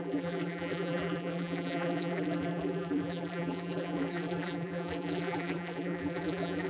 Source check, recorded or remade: remade